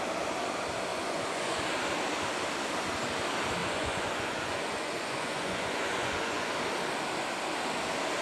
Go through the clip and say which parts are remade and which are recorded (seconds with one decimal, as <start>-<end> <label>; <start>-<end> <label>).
0.0-0.9 recorded; 0.9-1.6 remade; 1.6-3.6 recorded; 3.6-6.5 remade; 6.5-8.2 recorded